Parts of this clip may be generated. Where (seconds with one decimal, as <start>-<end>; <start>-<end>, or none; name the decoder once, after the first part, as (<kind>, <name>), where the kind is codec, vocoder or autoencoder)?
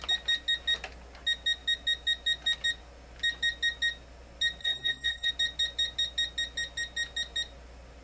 4.6-5.3 (codec, SNAC)